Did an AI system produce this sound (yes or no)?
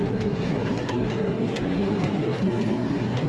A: yes